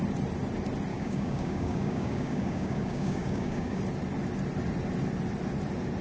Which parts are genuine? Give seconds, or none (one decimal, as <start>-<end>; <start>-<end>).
0.0-0.9; 3.8-6.0